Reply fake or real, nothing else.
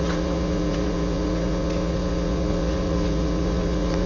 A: fake